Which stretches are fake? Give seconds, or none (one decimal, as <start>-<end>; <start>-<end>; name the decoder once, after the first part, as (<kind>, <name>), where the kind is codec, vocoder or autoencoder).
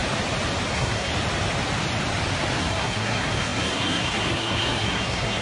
0.7-1.1 (codec, SNAC); 2.6-5.4